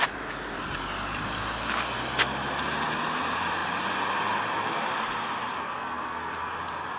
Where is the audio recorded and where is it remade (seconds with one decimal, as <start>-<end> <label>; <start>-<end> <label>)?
0.0-5.6 recorded; 5.6-6.5 remade; 6.5-7.0 recorded